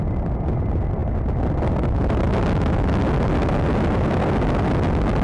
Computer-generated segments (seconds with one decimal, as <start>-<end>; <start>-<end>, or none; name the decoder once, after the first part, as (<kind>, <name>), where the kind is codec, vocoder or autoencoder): none